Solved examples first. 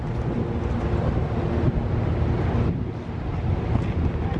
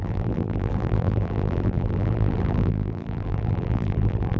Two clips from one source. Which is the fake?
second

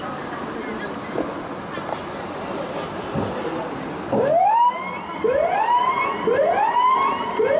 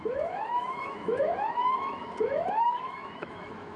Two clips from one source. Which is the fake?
second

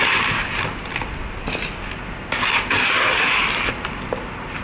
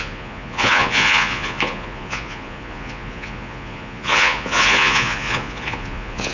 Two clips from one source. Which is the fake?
second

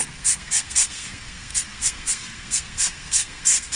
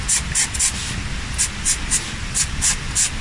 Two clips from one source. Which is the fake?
first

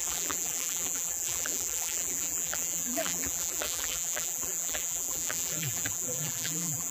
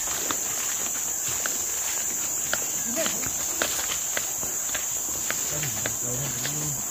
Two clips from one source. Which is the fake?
first